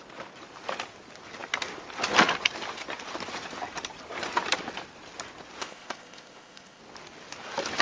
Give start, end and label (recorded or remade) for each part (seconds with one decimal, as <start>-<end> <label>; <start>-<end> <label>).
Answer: 0.0-5.6 recorded; 5.6-6.8 remade; 6.8-7.8 recorded